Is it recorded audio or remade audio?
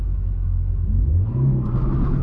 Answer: remade